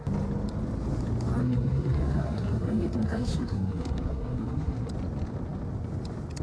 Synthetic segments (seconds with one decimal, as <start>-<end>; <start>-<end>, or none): 1.4-4.9